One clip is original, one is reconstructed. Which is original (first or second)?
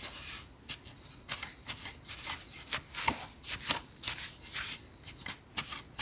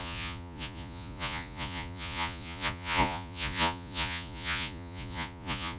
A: first